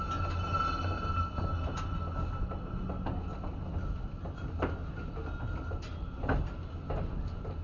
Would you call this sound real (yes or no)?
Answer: yes